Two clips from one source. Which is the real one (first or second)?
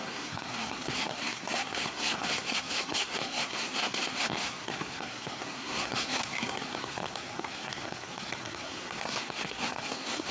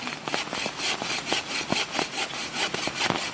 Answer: second